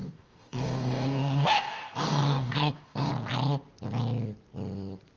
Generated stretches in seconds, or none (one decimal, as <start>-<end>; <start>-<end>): 0.0-3.1